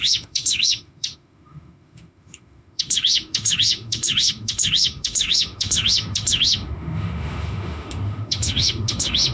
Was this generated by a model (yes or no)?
yes